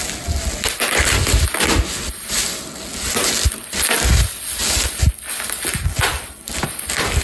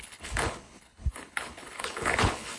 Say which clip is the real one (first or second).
first